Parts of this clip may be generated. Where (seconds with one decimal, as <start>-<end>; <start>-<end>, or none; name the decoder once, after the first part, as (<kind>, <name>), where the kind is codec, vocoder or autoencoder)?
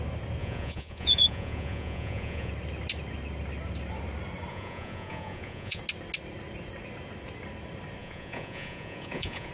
0.4-2.5 (vocoder, Vocos); 4.5-5.8; 8.0-9.5